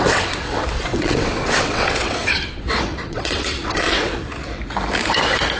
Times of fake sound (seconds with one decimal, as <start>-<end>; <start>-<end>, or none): 0.0-4.3